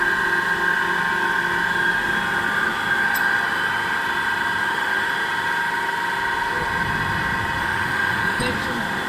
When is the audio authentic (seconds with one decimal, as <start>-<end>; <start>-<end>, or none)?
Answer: 0.0-4.6; 5.1-7.6; 8.4-9.1

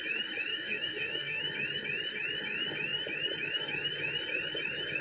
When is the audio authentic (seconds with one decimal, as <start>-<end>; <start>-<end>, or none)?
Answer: 0.0-0.5; 1.4-5.0

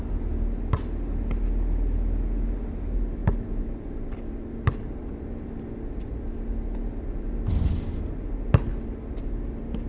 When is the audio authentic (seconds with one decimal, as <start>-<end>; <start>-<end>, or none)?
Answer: 0.0-9.9

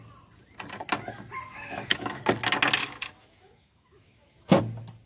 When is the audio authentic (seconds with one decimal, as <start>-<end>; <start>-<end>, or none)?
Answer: 0.0-1.5; 2.2-2.8; 4.6-5.1

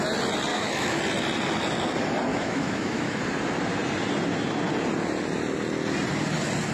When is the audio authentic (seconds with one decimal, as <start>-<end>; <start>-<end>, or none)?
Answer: 0.0-0.5; 1.0-2.3; 3.2-6.7